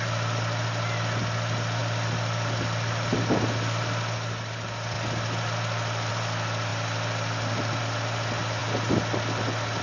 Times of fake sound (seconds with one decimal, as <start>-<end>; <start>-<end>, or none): none